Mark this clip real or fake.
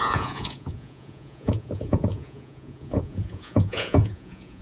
fake